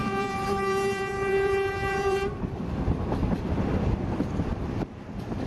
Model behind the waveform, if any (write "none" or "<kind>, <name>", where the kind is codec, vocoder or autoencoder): vocoder, BigVGAN v2